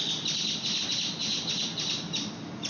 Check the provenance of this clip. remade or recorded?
recorded